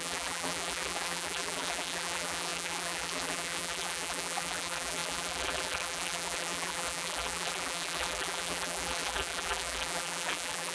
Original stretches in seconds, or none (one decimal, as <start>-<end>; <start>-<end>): none